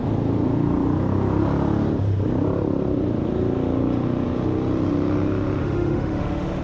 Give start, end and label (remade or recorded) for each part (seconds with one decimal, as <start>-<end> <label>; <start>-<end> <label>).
0.0-5.6 recorded; 5.6-6.6 remade

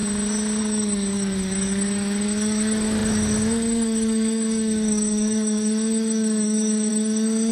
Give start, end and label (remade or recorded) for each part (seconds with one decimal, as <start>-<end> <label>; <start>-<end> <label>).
0.0-0.6 recorded; 0.6-7.5 remade